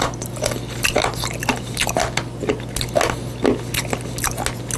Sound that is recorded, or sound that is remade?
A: recorded